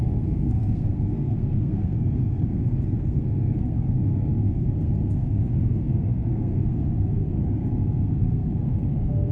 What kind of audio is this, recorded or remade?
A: remade